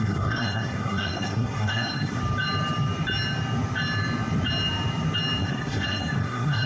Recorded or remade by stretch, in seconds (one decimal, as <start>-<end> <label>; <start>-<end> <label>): 0.0-2.2 remade; 2.2-5.4 recorded; 5.4-6.7 remade